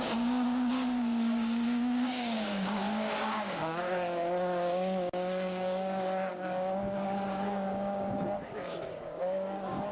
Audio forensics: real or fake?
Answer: fake